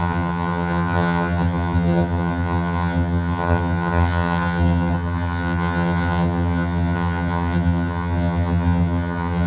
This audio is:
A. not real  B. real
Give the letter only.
A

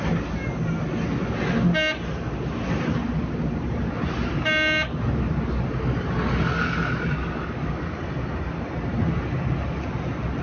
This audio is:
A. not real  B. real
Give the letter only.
B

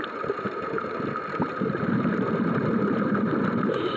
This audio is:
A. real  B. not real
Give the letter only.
B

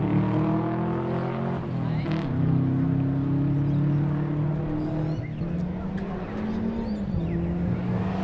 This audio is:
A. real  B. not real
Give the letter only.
A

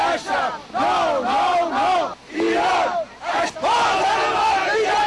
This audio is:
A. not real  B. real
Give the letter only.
B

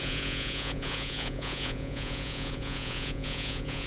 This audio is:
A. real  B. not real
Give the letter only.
B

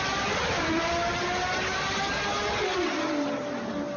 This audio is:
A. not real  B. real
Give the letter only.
B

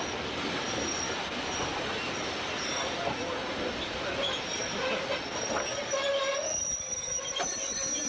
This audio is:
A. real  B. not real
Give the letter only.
A